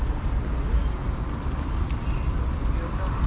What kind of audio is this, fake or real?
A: real